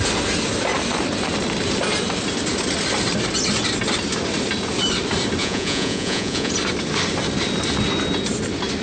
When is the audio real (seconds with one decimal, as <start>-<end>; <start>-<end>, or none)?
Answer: 0.0-5.4; 6.5-8.8